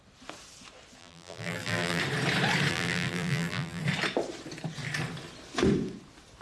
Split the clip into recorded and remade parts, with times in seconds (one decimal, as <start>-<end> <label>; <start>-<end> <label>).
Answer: 0.0-1.0 recorded; 1.0-2.0 remade; 2.0-2.7 recorded; 2.7-3.8 remade; 3.8-6.4 recorded